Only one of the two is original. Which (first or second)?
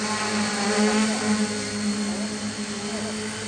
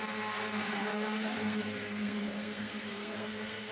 first